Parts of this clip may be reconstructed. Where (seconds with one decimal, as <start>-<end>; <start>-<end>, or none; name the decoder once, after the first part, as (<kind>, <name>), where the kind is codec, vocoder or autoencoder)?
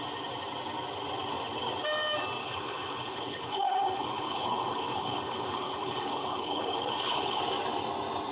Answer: 2.4-7.4 (codec, HILCodec)